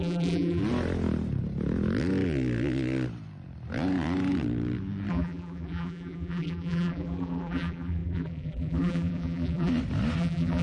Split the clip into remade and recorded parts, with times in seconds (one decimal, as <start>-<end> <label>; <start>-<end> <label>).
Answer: 0.0-0.6 remade; 0.6-5.1 recorded; 5.1-9.7 remade; 9.7-10.2 recorded; 10.2-10.6 remade